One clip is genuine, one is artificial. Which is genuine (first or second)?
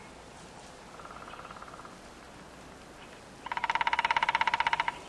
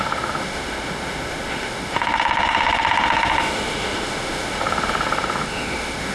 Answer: first